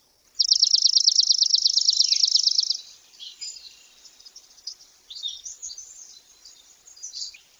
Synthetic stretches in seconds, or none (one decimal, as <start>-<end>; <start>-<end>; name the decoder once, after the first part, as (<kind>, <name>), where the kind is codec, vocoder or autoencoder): 1.5-3.4 (vocoder, BigVGAN v2)